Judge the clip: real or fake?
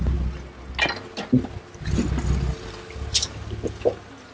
real